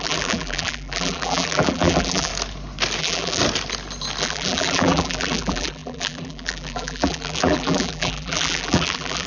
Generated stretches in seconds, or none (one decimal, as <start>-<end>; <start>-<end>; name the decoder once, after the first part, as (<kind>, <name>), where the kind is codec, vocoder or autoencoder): 0.0-2.3 (vocoder, BigVGAN v2); 3.0-3.4; 4.2-9.3